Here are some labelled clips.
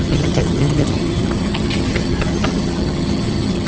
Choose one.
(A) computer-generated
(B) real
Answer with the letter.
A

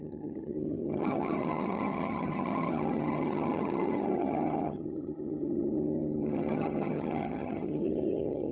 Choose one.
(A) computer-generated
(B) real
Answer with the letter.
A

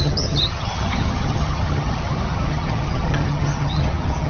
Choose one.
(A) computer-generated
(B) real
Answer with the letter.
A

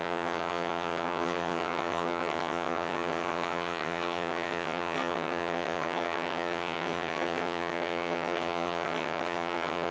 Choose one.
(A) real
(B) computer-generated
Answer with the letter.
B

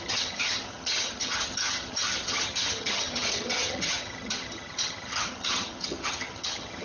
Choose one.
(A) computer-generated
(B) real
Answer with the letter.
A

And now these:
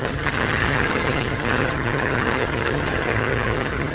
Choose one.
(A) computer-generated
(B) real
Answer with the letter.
A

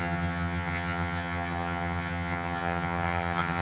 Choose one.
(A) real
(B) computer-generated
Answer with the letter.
B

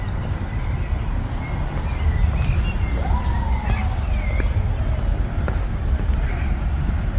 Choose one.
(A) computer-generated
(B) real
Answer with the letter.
B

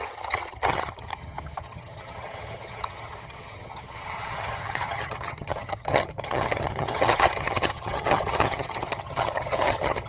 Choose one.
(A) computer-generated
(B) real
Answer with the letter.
A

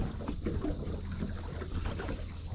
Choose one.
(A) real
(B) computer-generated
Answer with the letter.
A